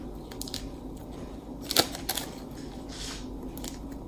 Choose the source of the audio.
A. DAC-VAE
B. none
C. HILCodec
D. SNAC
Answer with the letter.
B